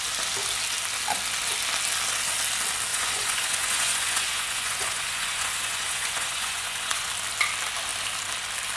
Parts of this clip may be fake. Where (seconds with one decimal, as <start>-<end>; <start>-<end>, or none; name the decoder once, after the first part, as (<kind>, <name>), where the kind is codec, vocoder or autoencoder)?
2.9-7.1 (vocoder, Vocos)